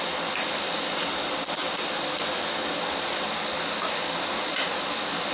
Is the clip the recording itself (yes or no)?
yes